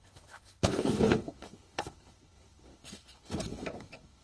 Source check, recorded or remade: remade